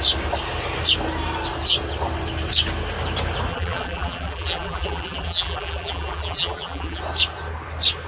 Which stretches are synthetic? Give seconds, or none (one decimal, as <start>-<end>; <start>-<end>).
3.5-7.0